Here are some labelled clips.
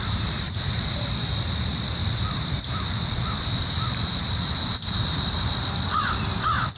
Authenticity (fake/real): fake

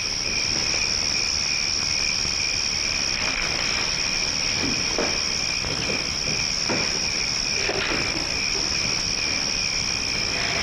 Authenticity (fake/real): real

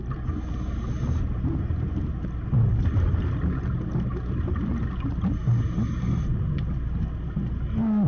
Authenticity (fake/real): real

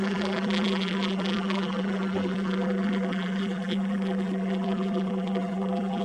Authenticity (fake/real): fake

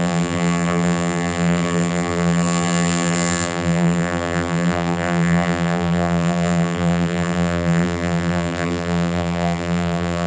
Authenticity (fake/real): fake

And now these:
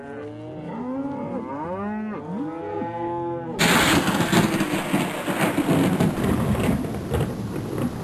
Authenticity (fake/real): real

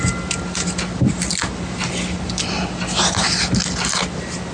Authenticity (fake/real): real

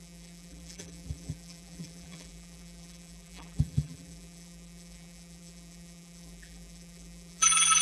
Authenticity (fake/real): fake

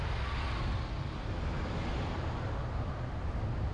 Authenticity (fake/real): real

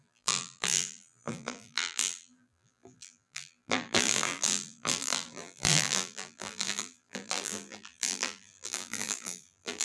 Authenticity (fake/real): fake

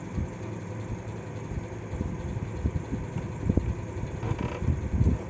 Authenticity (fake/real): real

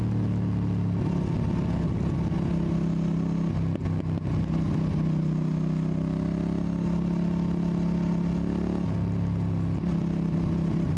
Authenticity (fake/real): real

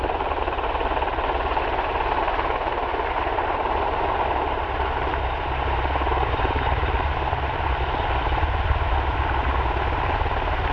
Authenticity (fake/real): fake